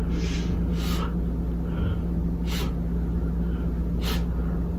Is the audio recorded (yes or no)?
yes